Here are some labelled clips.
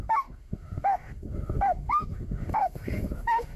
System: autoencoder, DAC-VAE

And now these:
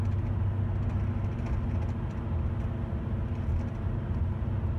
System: none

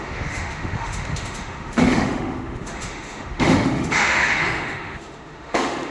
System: autoencoder, DAC-VAE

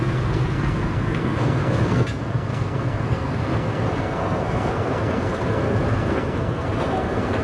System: codec, SNAC